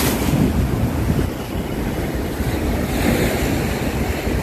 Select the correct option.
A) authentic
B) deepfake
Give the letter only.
B